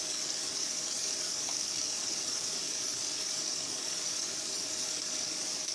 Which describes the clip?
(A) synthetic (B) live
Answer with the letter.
A